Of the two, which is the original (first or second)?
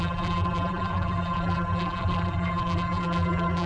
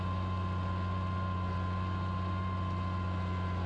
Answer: second